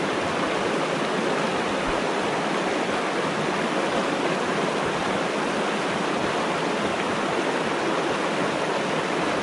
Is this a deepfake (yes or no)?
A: no